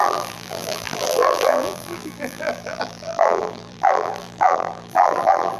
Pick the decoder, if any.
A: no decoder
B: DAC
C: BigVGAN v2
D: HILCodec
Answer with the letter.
C